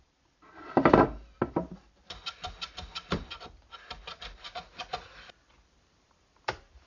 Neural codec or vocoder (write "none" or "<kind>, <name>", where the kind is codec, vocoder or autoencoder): vocoder, BigVGAN v2